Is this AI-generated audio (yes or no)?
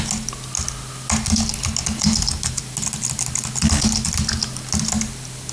no